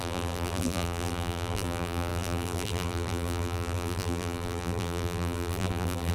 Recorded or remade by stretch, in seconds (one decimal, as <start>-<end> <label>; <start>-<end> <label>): 0.0-6.1 remade